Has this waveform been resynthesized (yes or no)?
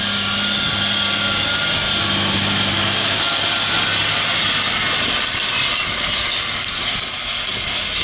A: no